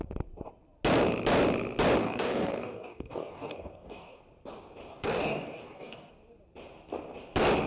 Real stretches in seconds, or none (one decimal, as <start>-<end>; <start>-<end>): 0.0-2.0; 4.2-4.9; 6.1-7.7